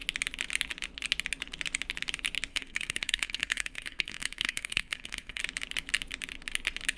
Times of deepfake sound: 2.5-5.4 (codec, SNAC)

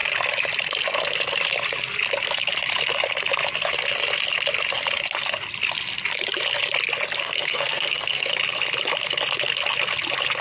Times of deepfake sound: 7.2-8.3 (codec, SNAC)

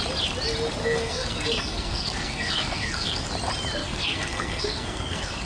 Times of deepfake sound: 0.8-3.2 (codec, SNAC); 3.8-5.5

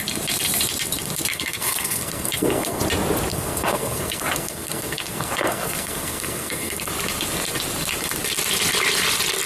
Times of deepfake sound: 1.3-2.8 (codec, SNAC); 3.3-6.9

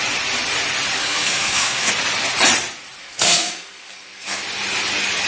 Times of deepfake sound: 1.0-1.9 (codec, SNAC); 3.0-4.4

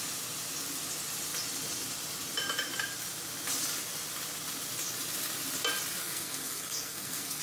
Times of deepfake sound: 6.0-7.4 (codec, SNAC)